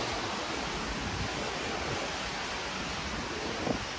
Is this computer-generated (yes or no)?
no